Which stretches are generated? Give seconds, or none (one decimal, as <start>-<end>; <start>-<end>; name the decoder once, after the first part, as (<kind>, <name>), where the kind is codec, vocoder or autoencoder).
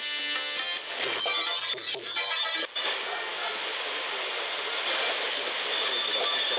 none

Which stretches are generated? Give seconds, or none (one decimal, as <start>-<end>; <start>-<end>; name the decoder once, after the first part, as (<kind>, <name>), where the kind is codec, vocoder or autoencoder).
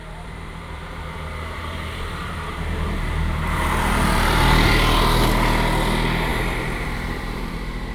0.0-4.7 (vocoder, BigVGAN v2); 6.3-7.5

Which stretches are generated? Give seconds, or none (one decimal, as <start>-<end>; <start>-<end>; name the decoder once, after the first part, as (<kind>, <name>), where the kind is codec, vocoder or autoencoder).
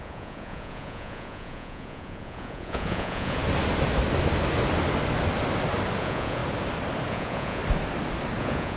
0.0-3.4 (vocoder, Vocos); 6.0-6.4; 7.1-7.6; 8.4-8.8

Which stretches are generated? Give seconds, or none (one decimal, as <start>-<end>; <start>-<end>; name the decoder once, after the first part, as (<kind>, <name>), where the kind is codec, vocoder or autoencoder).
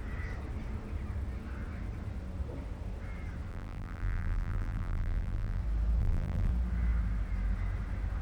3.5-5.6 (vocoder, BigVGAN v2); 6.0-6.5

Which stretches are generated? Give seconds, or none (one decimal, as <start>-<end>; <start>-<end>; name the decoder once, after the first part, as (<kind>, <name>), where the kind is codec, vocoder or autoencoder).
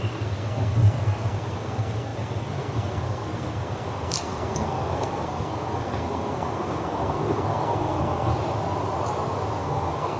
0.0-8.3 (codec, SNAC); 9.6-10.2